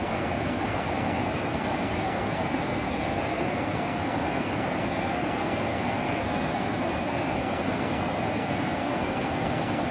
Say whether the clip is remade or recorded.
remade